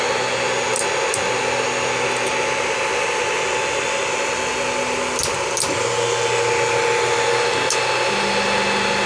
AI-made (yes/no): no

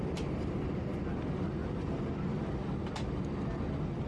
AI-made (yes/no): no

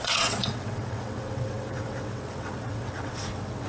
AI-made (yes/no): yes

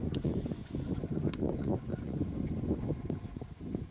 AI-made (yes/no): yes